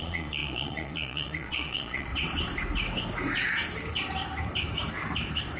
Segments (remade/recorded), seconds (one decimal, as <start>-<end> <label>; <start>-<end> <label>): 0.0-2.1 remade; 2.1-5.6 recorded